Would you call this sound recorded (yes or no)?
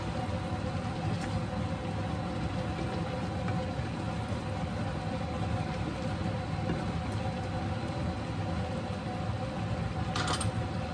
yes